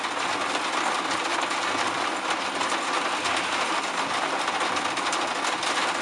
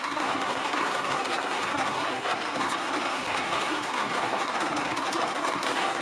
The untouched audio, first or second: first